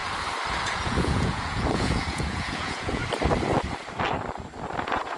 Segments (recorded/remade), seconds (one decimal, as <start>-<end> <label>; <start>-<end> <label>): 0.0-0.6 recorded; 0.6-3.0 remade; 3.0-4.8 recorded; 4.8-5.2 remade